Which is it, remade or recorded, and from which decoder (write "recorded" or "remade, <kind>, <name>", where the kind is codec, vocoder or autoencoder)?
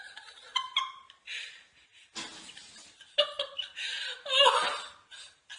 recorded